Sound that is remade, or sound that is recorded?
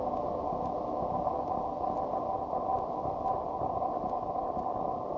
recorded